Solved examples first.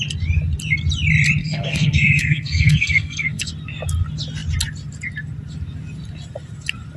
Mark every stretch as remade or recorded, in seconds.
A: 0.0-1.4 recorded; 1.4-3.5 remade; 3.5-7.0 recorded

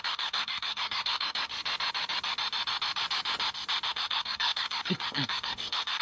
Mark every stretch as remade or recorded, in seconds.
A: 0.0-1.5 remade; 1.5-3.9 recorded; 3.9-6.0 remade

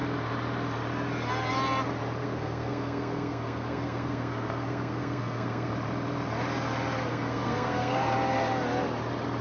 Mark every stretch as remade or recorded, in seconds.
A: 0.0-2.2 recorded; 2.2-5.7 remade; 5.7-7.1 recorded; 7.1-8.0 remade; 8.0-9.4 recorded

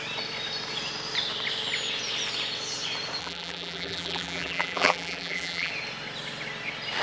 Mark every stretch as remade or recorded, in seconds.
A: 0.0-3.2 recorded; 3.2-5.7 remade; 5.7-7.0 recorded

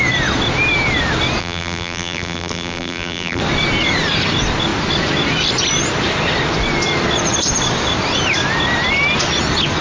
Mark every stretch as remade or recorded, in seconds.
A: 0.0-1.4 recorded; 1.4-3.4 remade; 3.4-9.8 recorded

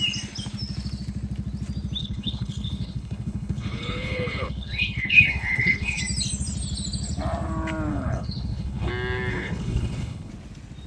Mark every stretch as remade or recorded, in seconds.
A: 0.0-2.0 recorded; 2.0-6.0 remade; 6.0-7.9 recorded; 7.9-8.9 remade; 8.9-9.3 recorded; 9.3-10.3 remade; 10.3-10.9 recorded

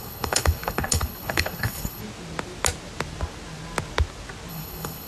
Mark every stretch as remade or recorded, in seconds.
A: 0.0-2.0 remade; 2.0-4.5 recorded; 4.5-5.1 remade

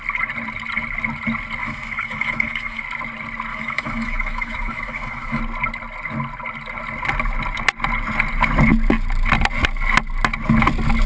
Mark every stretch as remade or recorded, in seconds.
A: 0.0-1.6 recorded; 1.6-2.8 remade; 2.8-3.5 recorded; 3.5-5.4 remade; 5.4-11.1 recorded